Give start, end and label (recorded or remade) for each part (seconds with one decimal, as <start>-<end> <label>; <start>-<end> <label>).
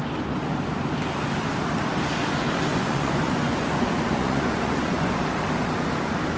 0.0-2.7 recorded; 2.7-5.1 remade; 5.1-6.4 recorded